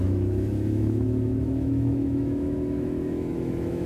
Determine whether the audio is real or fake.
fake